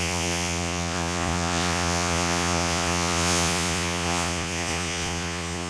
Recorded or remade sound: remade